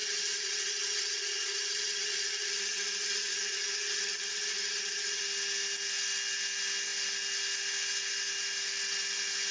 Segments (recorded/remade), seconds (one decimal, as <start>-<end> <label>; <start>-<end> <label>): 0.0-5.2 remade; 5.2-9.5 recorded